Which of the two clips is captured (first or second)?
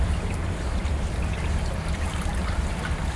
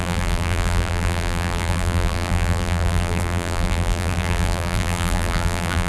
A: first